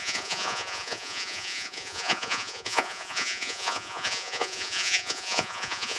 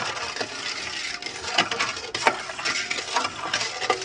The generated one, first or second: first